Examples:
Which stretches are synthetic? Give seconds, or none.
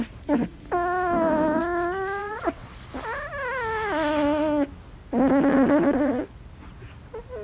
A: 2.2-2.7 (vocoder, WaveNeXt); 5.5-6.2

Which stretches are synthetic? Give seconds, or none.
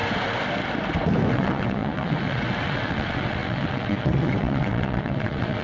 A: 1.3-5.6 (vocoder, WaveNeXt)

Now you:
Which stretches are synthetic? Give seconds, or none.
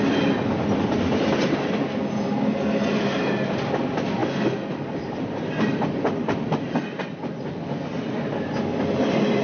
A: none